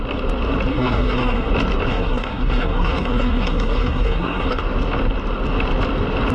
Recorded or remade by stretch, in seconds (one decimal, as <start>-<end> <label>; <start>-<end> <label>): 0.0-0.7 recorded; 0.7-1.5 remade; 1.5-1.9 recorded; 1.9-4.6 remade; 4.6-6.3 recorded